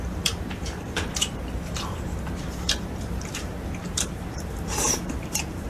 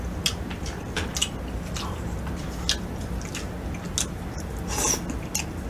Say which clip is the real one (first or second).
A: second